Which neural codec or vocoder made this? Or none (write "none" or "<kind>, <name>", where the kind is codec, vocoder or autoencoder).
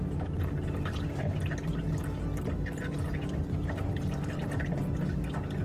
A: none